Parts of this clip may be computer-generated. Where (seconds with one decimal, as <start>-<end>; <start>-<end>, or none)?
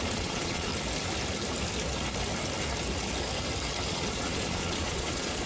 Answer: 0.0-0.7; 3.9-5.5